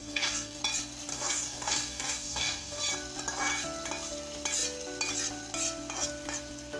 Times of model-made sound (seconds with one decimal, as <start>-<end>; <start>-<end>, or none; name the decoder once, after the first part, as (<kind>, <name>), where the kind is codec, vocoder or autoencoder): 0.0-0.6 (codec, DAC); 1.1-2.8